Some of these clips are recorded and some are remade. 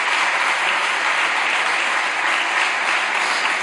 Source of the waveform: recorded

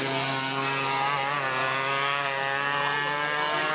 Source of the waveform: recorded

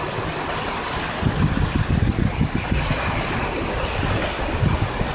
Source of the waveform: recorded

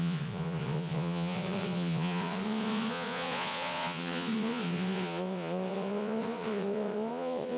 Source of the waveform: remade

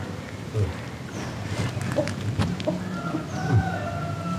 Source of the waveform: recorded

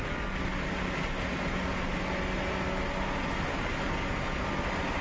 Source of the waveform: recorded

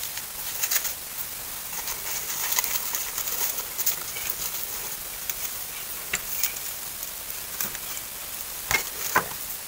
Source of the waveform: recorded